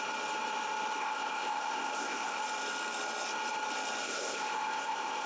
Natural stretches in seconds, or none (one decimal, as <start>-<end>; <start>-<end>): 0.0-1.0; 2.4-4.0